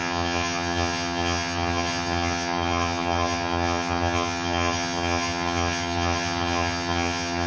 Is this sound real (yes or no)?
no